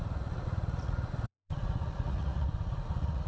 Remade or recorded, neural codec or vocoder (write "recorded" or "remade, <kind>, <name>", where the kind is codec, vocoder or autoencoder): remade, vocoder, Vocos